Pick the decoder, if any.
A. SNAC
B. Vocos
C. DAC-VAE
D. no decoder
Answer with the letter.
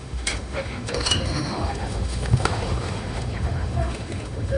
C